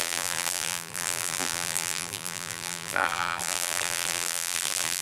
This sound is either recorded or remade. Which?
remade